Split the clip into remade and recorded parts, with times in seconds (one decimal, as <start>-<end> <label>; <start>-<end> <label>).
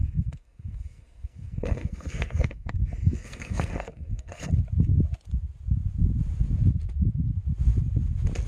0.0-4.5 remade; 4.5-8.5 recorded